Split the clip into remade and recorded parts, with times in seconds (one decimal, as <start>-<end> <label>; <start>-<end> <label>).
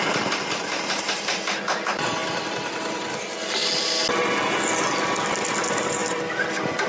0.0-2.2 recorded; 2.2-3.2 remade; 3.2-6.0 recorded; 6.0-6.9 remade